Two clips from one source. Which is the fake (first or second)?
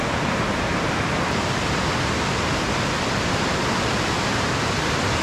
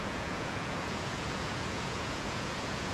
second